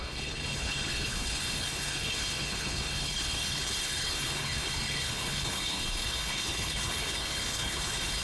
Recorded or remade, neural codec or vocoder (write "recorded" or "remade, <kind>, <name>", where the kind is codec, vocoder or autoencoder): remade, codec, HILCodec